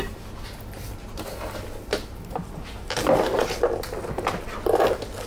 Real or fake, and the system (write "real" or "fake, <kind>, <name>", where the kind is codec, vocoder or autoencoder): real